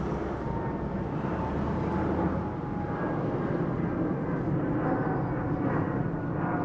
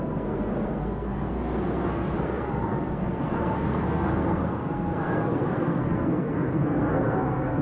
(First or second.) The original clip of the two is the first